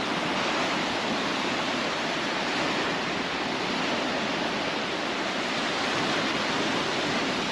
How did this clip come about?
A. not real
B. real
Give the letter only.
B